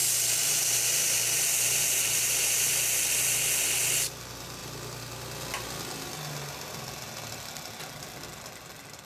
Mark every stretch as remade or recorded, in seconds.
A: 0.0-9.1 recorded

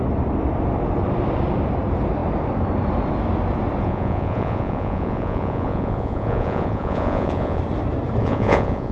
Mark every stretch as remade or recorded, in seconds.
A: 0.0-3.8 recorded; 3.8-7.6 remade; 7.6-8.2 recorded; 8.2-8.9 remade

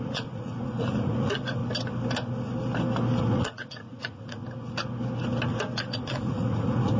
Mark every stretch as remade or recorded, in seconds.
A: 0.0-1.6 remade; 1.6-3.2 recorded; 3.2-4.4 remade; 4.4-5.8 recorded; 5.8-7.0 remade

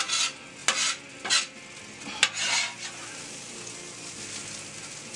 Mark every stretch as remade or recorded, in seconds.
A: 0.0-5.2 recorded

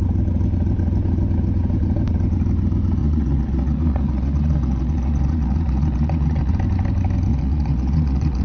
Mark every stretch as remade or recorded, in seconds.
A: 0.0-3.0 recorded; 3.0-6.5 remade; 6.5-7.3 recorded; 7.3-8.4 remade

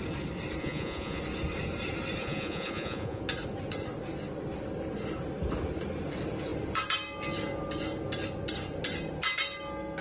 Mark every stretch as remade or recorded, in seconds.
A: 0.0-0.6 recorded; 0.6-1.2 remade; 1.2-2.2 recorded; 2.2-3.2 remade; 3.2-10.0 recorded

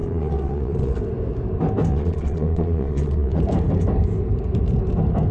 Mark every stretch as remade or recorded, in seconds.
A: 0.0-1.0 remade; 1.0-1.9 recorded; 1.9-3.4 remade; 3.4-5.3 recorded

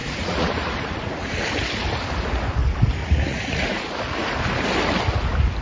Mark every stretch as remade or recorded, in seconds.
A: 0.0-1.3 remade; 1.3-3.0 recorded; 3.0-3.9 remade; 3.9-5.6 recorded